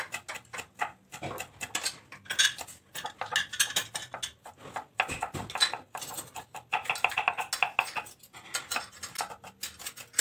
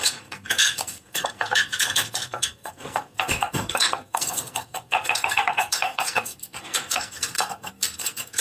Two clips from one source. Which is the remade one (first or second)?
second